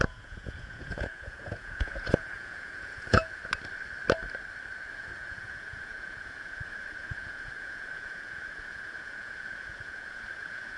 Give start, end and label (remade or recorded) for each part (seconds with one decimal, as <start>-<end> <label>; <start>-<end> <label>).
0.0-3.4 remade; 3.4-4.9 recorded; 4.9-10.8 remade